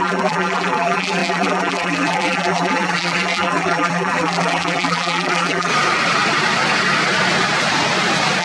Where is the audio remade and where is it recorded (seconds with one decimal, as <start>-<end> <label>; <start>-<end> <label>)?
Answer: 0.0-5.7 remade; 5.7-8.4 recorded